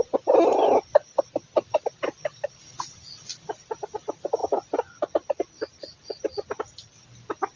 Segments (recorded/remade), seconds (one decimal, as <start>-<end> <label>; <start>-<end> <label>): 0.0-7.6 recorded